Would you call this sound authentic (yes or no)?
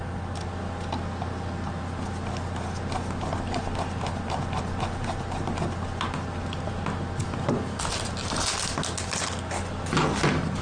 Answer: yes